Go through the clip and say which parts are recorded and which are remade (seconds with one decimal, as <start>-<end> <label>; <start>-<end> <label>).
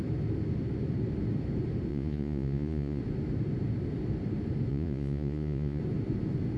0.0-1.9 recorded; 1.9-3.0 remade; 3.0-4.7 recorded; 4.7-5.8 remade; 5.8-6.6 recorded